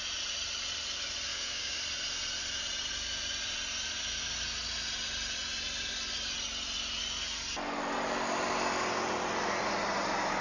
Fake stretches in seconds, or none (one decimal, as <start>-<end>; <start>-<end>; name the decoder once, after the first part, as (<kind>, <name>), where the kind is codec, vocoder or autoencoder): 1.3-1.8 (codec, DAC)